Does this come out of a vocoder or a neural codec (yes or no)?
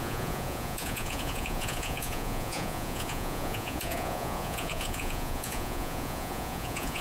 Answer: yes